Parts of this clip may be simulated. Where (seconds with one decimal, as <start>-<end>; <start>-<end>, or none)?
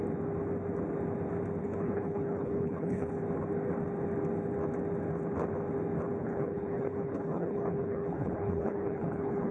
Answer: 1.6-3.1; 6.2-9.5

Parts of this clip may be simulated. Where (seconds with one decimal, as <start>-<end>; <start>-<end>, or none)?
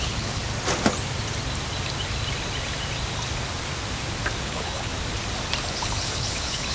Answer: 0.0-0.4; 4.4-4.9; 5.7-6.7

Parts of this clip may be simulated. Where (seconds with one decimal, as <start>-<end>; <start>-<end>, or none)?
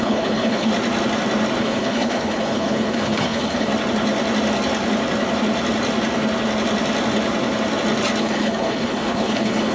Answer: 0.0-0.7; 1.6-3.7; 8.2-9.7